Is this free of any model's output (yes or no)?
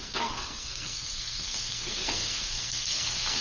no